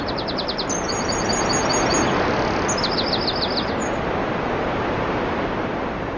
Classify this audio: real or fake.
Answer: real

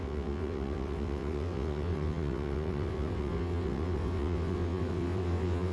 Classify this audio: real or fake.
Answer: fake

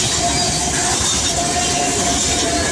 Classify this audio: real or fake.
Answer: real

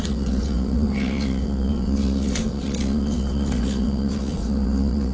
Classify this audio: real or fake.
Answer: fake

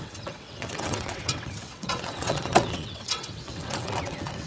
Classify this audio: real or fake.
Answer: fake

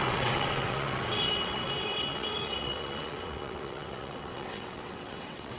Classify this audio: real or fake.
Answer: fake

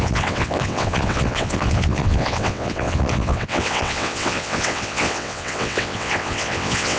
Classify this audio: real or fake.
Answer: fake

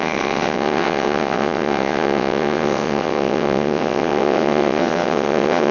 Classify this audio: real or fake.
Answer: fake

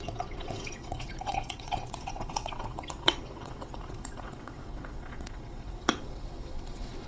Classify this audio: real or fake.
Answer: fake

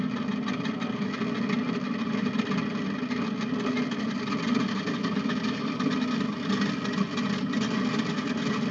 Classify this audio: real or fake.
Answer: real